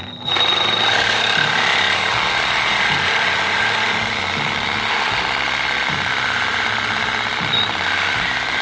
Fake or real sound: real